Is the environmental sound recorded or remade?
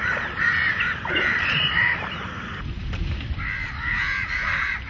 remade